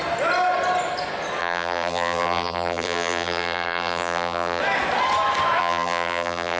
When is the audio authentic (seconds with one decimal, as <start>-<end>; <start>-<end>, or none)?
0.0-1.4; 4.6-5.6